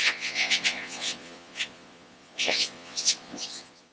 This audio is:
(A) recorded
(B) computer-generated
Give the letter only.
B